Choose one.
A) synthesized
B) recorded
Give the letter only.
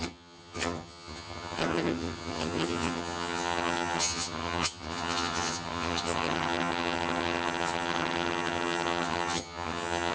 A